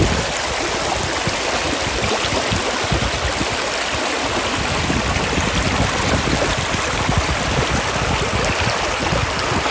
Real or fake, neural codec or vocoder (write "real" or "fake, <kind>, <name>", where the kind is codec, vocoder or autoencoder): real